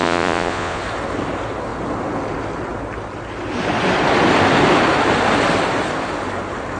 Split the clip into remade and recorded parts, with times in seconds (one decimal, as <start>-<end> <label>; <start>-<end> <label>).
0.0-0.8 remade; 0.8-6.8 recorded